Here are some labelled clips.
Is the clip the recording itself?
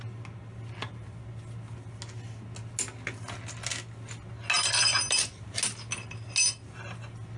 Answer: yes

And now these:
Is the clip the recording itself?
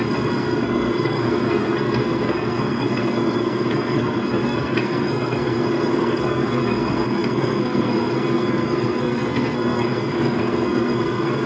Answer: no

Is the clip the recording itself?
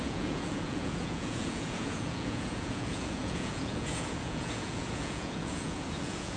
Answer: no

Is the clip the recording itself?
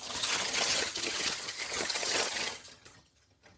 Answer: no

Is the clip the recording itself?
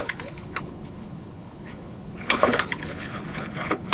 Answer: no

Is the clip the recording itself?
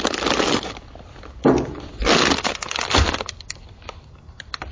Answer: yes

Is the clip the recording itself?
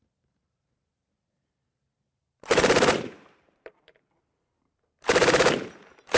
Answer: no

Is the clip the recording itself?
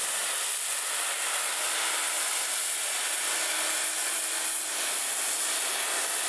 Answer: yes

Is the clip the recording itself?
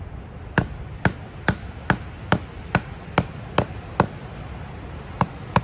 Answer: yes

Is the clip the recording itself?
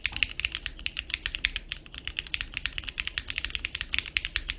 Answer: yes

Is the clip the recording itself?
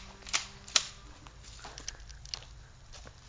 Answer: yes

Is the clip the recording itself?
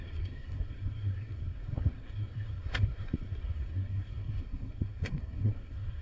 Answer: no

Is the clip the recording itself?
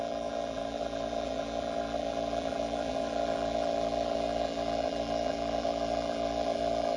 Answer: no